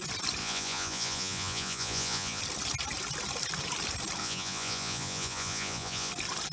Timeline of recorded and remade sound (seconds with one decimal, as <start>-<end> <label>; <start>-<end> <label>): 0.0-0.4 recorded; 0.4-2.4 remade; 2.4-4.2 recorded; 4.2-6.1 remade; 6.1-6.5 recorded